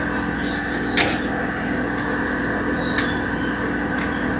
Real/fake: real